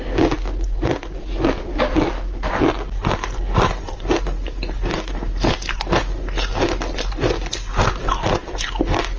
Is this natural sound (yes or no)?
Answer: yes